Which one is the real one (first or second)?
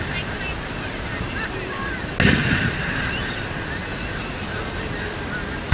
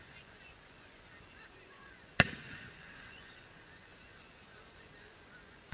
first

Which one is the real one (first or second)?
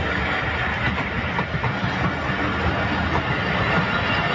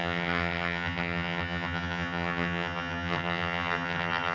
first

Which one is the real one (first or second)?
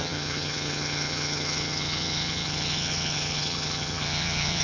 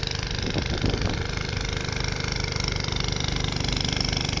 second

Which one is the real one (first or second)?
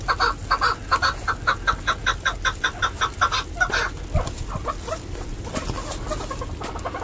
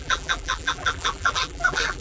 first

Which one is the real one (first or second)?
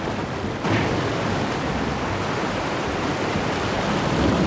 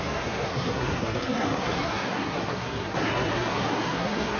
first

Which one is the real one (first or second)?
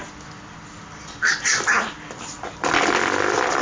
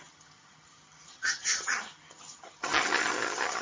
first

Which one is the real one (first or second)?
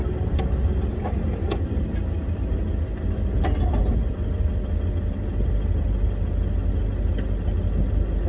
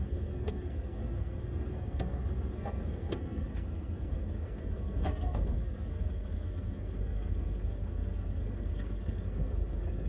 first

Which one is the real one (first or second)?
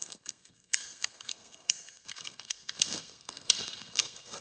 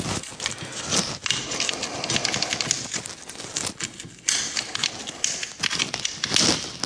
second